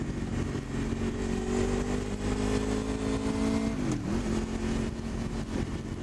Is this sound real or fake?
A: real